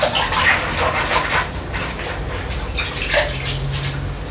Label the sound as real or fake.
real